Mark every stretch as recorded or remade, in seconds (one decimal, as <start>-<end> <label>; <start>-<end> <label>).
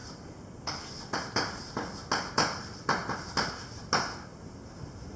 0.0-5.2 recorded